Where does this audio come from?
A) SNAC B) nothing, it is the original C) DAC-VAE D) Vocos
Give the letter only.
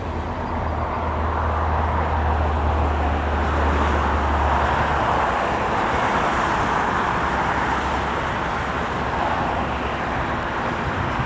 B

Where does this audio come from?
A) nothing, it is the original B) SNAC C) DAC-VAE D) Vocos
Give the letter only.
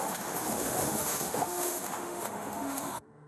C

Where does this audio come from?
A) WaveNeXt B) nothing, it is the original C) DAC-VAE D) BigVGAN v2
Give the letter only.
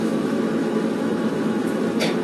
C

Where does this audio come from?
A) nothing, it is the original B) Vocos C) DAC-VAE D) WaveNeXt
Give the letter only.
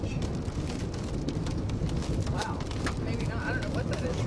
A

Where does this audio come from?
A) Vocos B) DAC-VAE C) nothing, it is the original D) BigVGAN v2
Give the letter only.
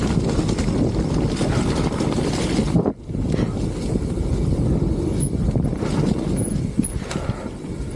C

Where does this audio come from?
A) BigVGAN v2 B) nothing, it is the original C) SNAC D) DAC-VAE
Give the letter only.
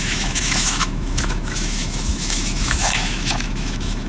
D